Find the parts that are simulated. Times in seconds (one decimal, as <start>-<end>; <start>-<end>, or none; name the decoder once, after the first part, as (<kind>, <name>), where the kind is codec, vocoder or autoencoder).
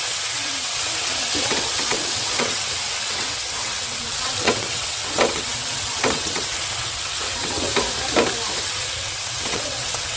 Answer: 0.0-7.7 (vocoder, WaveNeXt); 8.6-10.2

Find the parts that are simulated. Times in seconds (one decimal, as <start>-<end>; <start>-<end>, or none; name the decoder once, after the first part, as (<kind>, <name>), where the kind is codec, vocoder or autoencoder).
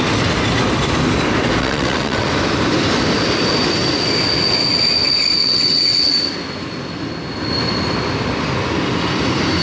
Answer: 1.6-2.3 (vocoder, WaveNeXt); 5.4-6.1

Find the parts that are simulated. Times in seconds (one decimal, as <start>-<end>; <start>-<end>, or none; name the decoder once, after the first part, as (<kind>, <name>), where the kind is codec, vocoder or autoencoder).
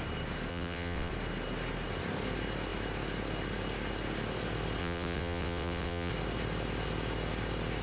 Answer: 0.5-1.1 (vocoder, WaveNeXt); 4.8-6.1